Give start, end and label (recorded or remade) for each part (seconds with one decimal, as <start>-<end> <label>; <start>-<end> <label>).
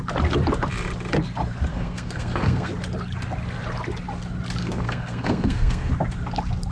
0.0-1.7 recorded; 1.7-2.7 remade; 2.7-4.6 recorded; 4.6-5.9 remade; 5.9-6.7 recorded